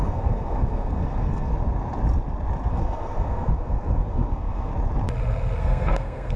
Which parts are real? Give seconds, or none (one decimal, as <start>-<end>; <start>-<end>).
1.5-2.7; 4.7-5.6